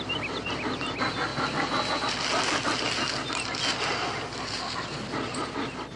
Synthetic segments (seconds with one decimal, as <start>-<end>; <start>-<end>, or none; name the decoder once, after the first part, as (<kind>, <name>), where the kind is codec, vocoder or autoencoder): none